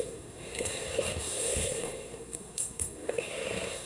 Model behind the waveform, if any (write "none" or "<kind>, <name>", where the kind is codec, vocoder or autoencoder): codec, SNAC